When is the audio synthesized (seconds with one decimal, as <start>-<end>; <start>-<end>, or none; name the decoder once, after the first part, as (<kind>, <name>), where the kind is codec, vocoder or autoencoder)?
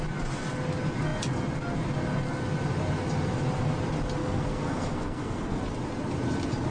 4.2-5.6 (codec, SNAC)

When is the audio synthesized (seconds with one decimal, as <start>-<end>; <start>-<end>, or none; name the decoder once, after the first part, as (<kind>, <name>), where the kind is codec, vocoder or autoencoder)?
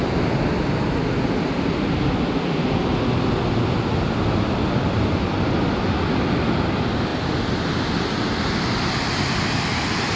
none